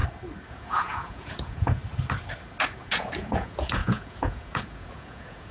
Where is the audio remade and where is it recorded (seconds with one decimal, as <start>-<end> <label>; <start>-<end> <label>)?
0.0-0.5 recorded; 0.5-1.8 remade; 1.8-2.8 recorded; 2.8-5.5 remade